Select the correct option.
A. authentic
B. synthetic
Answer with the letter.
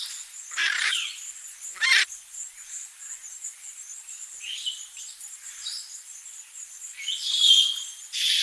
B